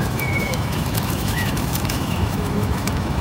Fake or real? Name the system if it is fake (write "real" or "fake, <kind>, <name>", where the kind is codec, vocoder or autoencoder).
fake, autoencoder, DAC-VAE